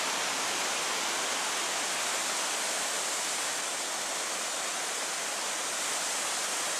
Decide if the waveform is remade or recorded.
recorded